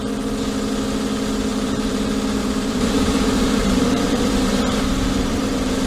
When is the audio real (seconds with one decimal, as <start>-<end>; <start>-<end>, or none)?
0.0-1.5; 2.0-2.4